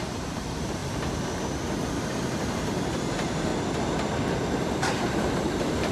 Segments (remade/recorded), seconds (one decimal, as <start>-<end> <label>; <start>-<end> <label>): 0.0-0.8 remade; 0.8-1.9 recorded; 1.9-3.5 remade; 3.5-4.7 recorded; 4.7-5.9 remade